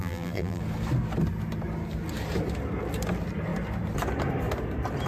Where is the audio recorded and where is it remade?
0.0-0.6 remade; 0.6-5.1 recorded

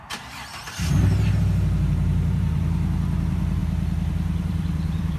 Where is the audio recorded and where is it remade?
0.0-3.6 remade; 3.6-4.1 recorded; 4.1-5.2 remade

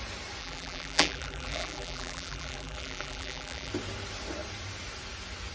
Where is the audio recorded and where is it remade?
0.0-0.4 recorded; 0.4-3.7 remade; 3.7-5.5 recorded